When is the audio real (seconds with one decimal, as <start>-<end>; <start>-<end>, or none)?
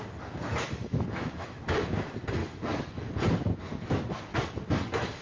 0.0-0.5; 1.6-2.4; 3.1-5.2